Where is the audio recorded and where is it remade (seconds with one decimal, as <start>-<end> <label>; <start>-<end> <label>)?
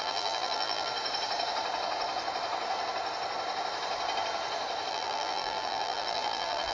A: 0.0-0.9 remade; 0.9-4.9 recorded; 4.9-6.7 remade